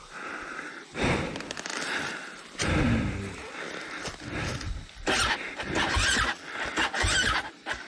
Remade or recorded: recorded